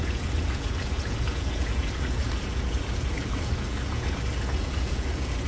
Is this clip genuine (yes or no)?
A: no